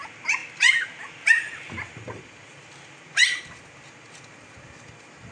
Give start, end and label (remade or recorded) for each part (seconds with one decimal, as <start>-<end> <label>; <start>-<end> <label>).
0.0-5.3 recorded